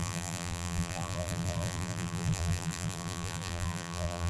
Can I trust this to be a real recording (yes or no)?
no